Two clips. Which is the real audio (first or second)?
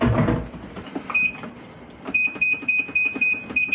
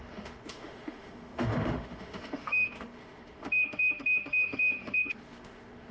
first